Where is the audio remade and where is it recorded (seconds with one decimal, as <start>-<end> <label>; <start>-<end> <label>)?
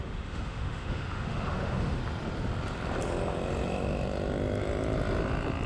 0.0-2.0 remade; 2.0-5.7 recorded